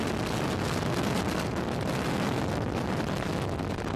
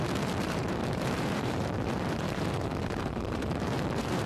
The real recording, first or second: first